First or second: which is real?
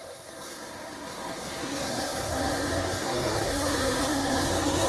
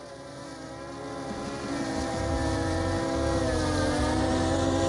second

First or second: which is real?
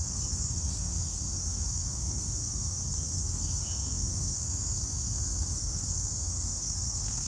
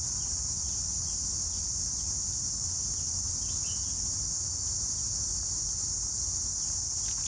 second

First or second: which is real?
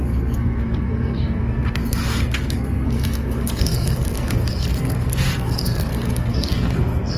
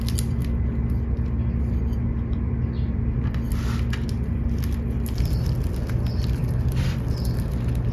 second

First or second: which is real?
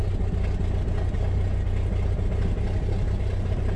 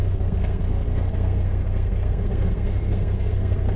first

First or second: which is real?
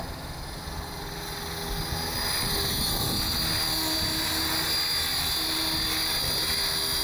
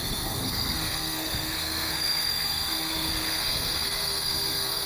first